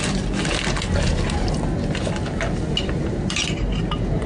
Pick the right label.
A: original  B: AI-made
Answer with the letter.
A